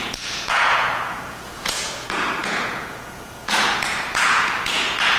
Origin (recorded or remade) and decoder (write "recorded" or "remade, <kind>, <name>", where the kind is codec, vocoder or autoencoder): remade, vocoder, Vocos